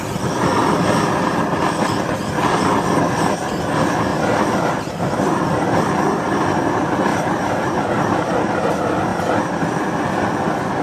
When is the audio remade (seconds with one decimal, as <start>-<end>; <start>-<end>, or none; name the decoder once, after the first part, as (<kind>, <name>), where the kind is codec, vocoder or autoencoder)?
4.1-5.9 (vocoder, BigVGAN v2); 7.1-8.7; 9.1-9.8